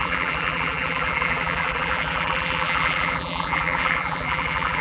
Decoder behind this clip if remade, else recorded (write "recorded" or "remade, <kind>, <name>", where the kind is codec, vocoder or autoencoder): remade, vocoder, BigVGAN v2